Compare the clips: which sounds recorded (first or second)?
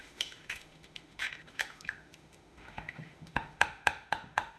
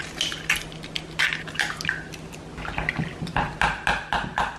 second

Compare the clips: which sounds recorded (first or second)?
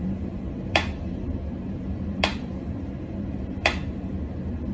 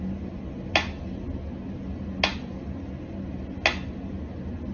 second